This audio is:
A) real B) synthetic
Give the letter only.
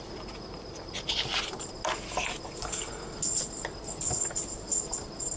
A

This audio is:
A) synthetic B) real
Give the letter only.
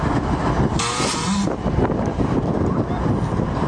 B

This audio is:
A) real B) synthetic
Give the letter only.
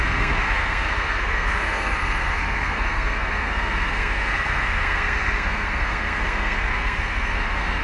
B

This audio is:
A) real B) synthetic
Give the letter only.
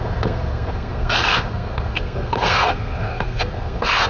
B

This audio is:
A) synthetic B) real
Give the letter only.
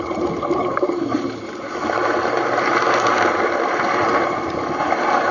B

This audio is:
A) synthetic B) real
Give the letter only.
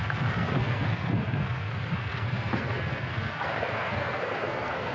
A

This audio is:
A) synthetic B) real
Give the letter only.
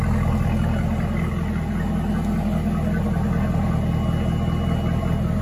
B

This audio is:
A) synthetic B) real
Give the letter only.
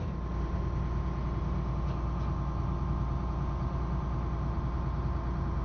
B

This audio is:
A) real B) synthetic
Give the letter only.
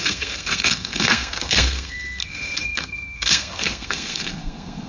B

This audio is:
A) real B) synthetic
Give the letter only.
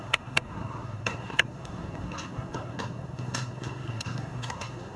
B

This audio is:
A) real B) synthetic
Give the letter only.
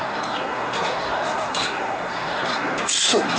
B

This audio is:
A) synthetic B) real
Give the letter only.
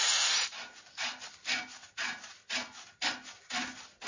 B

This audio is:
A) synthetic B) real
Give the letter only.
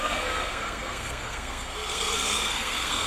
A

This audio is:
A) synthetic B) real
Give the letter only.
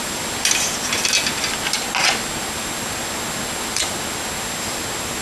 B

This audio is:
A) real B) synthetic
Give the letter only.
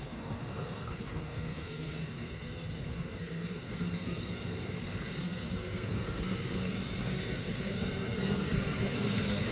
B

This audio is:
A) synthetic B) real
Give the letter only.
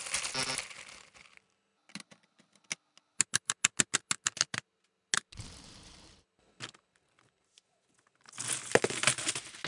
B